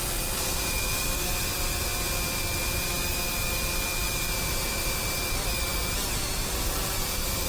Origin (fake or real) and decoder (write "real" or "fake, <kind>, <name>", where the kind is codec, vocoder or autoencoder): real